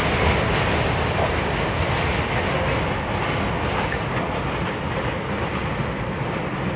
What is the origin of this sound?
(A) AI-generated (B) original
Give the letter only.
B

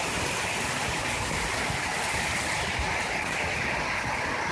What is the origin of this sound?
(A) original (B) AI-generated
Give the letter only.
A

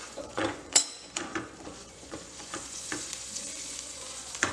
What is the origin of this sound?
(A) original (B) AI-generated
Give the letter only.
B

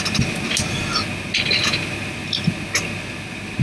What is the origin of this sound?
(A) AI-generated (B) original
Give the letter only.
B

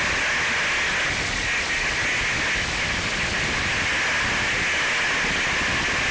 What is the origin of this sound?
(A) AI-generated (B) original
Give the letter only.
B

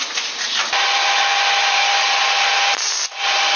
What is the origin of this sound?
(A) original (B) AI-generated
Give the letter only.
A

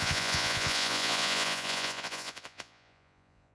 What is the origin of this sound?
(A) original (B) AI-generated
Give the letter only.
B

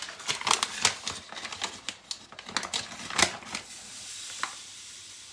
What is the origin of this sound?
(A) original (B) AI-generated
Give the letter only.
A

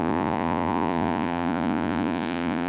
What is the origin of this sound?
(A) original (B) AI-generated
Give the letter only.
B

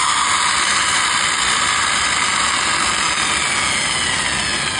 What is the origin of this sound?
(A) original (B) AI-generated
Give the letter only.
A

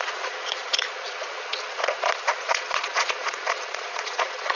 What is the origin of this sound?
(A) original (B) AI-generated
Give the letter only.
B